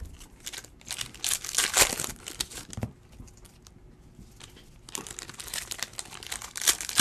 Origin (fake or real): real